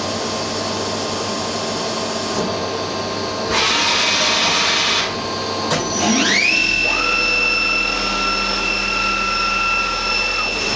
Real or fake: real